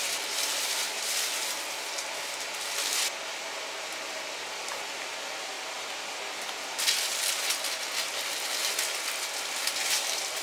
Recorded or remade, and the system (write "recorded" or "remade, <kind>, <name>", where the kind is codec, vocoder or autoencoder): recorded